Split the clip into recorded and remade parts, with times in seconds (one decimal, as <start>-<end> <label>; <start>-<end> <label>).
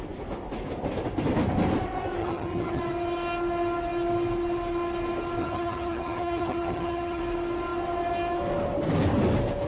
0.0-2.2 recorded; 2.2-2.8 remade; 2.8-5.4 recorded; 5.4-7.2 remade; 7.2-9.7 recorded